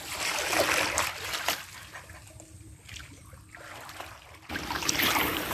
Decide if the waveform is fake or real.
real